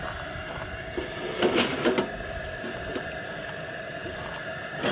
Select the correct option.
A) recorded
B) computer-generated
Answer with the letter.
A